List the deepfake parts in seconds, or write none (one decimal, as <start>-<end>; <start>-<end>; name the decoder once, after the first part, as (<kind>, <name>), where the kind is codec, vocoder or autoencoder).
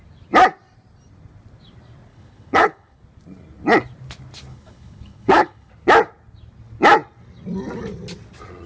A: 2.1-3.0 (codec, HILCodec); 4.5-5.7